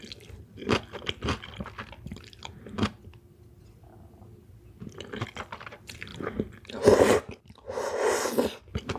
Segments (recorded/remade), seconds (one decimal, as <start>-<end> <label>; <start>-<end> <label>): 0.0-9.0 recorded